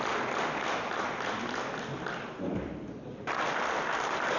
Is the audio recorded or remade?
recorded